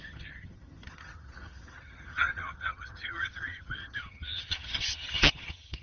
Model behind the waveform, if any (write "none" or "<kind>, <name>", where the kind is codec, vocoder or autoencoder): vocoder, HiFi-GAN